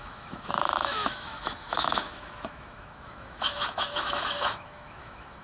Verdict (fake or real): fake